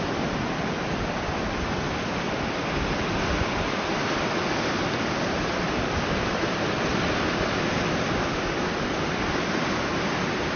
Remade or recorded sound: recorded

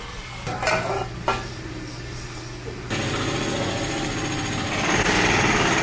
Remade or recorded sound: recorded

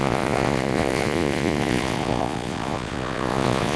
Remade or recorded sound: remade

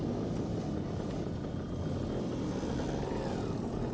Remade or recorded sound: recorded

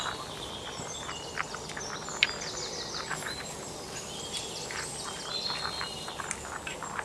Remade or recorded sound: recorded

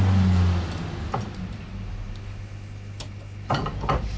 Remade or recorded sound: recorded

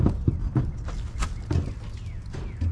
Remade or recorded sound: recorded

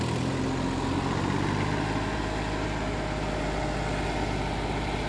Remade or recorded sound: recorded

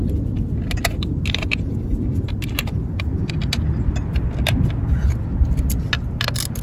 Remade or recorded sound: recorded